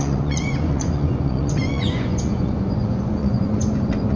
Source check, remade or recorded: remade